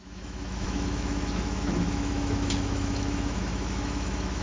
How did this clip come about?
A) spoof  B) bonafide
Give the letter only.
A